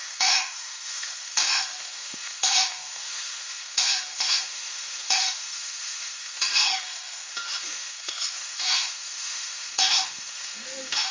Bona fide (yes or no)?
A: no